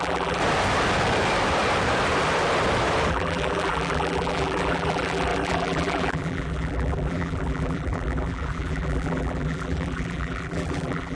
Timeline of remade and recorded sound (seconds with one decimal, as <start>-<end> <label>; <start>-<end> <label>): 0.0-0.4 remade; 0.4-3.1 recorded; 3.1-11.2 remade